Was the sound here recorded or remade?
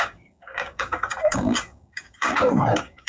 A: remade